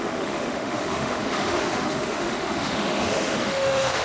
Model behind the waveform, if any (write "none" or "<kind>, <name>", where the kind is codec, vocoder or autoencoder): autoencoder, DAC-VAE